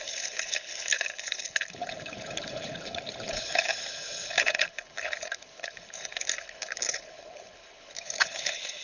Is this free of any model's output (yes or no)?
no